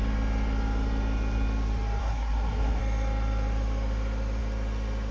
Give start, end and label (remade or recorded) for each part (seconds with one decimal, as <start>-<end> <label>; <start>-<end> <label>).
0.0-2.0 recorded; 2.0-2.8 remade; 2.8-5.1 recorded